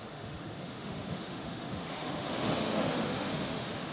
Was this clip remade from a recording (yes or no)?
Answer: yes